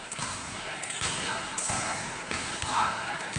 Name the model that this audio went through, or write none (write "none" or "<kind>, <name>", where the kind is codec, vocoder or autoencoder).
codec, SNAC